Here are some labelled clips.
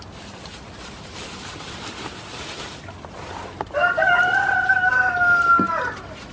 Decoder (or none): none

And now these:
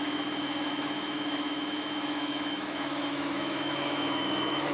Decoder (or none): autoencoder, DAC-VAE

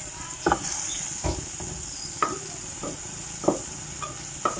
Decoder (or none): none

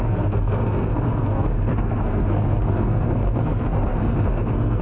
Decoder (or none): codec, SNAC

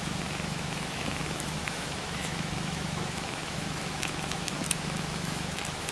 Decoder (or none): autoencoder, DAC-VAE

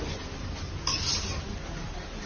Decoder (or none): none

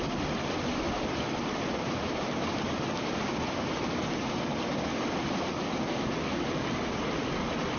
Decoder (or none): vocoder, BigVGAN v2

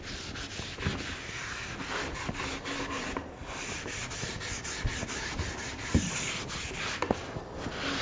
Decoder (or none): none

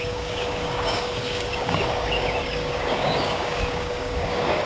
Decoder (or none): codec, DAC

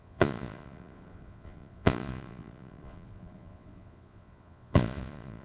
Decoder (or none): vocoder, Vocos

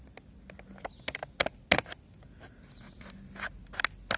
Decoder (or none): none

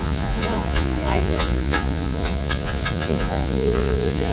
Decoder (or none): vocoder, Vocos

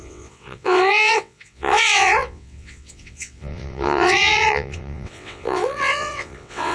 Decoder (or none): vocoder, WaveNeXt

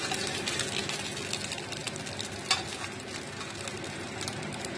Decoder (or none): none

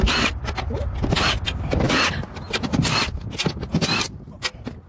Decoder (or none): none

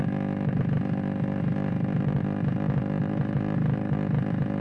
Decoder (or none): none